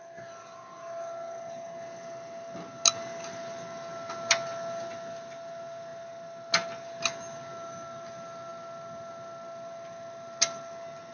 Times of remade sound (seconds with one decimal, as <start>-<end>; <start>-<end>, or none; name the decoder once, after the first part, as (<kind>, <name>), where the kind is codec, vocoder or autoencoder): none